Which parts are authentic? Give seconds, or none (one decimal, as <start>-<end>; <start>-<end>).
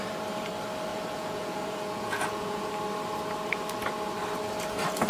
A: 0.0-0.9; 2.7-5.1